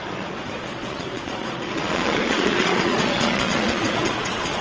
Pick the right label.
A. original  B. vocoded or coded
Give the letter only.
B